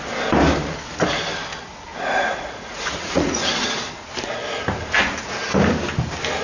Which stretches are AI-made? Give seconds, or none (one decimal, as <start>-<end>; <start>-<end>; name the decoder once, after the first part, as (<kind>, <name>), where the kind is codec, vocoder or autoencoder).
1.9-3.4 (vocoder, Vocos)